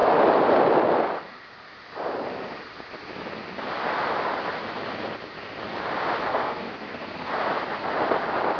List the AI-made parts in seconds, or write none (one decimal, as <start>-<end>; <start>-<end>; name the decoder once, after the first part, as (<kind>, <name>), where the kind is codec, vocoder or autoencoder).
6.3-7.3 (codec, SNAC)